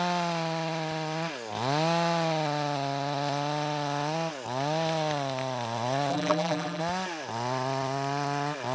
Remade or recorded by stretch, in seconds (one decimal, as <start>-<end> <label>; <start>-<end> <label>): 0.0-6.1 recorded; 6.1-6.8 remade; 6.8-8.7 recorded